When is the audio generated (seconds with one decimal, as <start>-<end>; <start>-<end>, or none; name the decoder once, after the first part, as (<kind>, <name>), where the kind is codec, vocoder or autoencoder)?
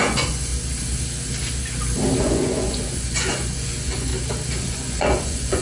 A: 0.0-0.5 (vocoder, Vocos); 2.2-4.1; 4.6-5.6